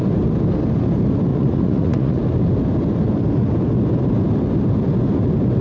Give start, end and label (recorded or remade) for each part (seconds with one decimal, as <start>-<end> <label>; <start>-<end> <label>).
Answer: 0.0-1.3 recorded; 1.3-2.2 remade; 2.2-5.6 recorded

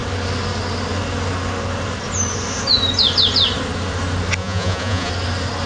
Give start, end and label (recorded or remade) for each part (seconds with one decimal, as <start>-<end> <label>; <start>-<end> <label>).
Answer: 0.0-4.4 recorded; 4.4-5.1 remade; 5.1-5.7 recorded

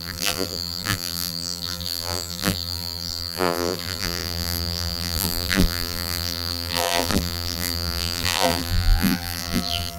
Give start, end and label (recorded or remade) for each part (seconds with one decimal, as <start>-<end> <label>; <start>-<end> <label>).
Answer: 0.0-10.0 remade

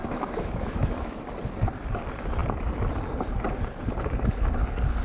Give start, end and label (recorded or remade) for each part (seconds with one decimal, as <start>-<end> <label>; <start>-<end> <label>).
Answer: 0.0-1.2 remade; 1.2-5.0 recorded

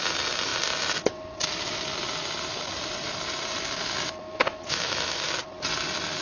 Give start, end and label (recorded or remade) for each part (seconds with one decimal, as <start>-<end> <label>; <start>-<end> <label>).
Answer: 0.0-4.3 recorded; 4.3-5.3 remade; 5.3-6.2 recorded